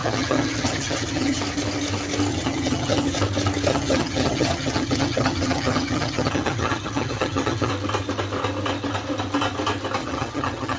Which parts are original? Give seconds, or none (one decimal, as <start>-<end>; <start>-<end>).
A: 1.4-2.3; 3.2-3.7; 7.7-10.0